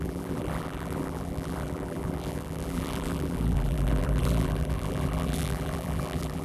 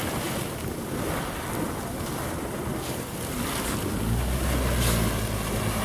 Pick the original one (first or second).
second